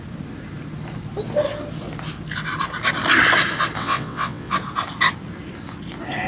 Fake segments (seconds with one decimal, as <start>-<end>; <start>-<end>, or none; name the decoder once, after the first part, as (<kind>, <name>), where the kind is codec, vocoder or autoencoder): 3.8-4.5 (vocoder, WaveNeXt)